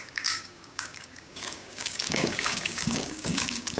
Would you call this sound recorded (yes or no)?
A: no